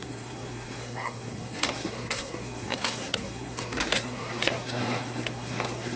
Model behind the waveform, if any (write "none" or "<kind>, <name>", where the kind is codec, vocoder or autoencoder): codec, SNAC